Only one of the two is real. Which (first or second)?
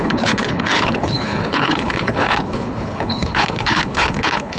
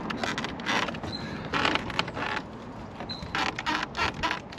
second